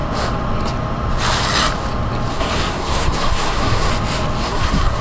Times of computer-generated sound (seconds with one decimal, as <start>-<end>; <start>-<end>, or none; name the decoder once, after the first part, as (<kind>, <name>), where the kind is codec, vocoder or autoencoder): 2.3-3.9 (codec, SNAC); 4.4-5.0